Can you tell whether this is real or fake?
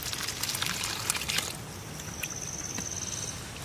real